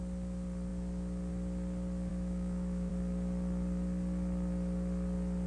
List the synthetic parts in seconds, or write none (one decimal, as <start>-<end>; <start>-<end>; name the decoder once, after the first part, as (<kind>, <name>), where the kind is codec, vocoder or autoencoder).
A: 2.1-2.9 (autoencoder, DAC-VAE)

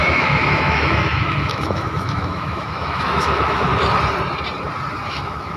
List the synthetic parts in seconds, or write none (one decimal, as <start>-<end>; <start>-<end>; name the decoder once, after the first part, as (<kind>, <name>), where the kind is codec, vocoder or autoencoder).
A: 0.0-3.7 (autoencoder, DAC-VAE); 5.1-5.6

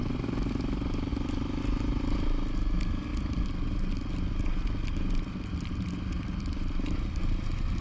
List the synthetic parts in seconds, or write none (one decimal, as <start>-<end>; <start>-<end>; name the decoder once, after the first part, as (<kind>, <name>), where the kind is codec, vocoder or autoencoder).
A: none

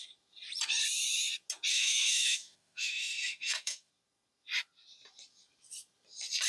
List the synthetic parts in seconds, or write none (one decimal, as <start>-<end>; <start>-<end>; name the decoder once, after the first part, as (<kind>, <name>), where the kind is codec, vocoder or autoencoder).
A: 1.7-3.9 (autoencoder, DAC-VAE)

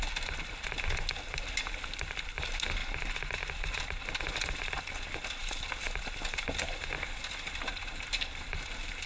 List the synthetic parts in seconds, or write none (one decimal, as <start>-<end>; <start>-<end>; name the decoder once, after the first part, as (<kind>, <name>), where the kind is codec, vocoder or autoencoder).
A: none

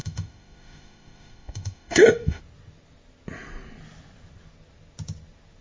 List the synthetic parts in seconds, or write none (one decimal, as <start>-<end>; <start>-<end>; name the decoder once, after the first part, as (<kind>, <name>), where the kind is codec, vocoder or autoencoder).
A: 0.0-2.4 (autoencoder, DAC-VAE)